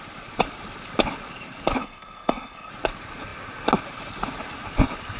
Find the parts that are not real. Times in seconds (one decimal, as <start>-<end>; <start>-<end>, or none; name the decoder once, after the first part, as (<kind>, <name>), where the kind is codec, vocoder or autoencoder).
1.8-2.7 (codec, SNAC)